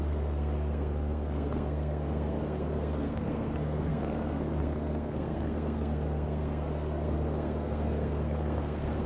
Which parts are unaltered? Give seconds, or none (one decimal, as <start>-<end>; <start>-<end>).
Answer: none